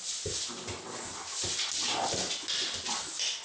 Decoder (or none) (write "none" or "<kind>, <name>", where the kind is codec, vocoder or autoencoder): none